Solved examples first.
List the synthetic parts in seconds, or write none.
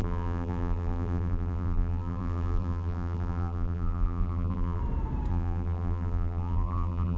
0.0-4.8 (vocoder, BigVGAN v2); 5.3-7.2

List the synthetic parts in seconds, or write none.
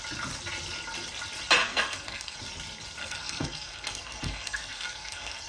1.6-2.4 (codec, SNAC); 3.0-5.5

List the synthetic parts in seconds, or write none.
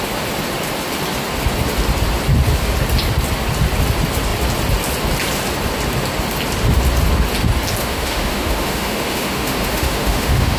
7.8-10.6 (autoencoder, DAC-VAE)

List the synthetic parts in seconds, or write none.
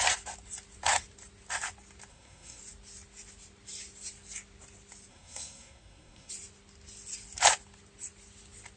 2.1-2.6 (codec, SNAC); 5.1-6.3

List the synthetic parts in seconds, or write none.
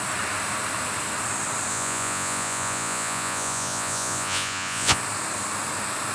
1.7-5.0 (vocoder, Vocos)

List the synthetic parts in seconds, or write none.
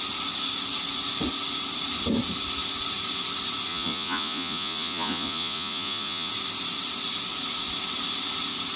3.7-6.3 (vocoder, Vocos)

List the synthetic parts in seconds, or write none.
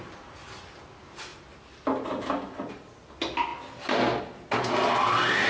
none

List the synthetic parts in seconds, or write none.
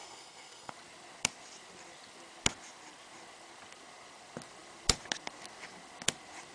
0.0-0.7 (codec, SNAC)